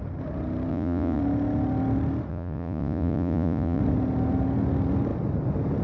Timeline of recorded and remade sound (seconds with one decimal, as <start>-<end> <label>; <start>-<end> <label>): 0.0-0.7 recorded; 0.7-1.2 remade; 1.2-2.3 recorded; 2.3-3.8 remade; 3.8-5.8 recorded